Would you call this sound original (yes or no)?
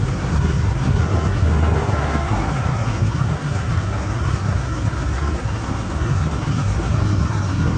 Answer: no